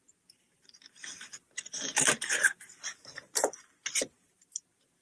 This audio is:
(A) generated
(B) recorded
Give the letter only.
B